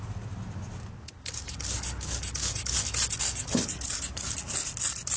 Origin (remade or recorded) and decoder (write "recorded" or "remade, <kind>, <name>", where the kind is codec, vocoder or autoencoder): recorded